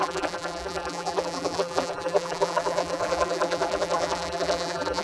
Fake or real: fake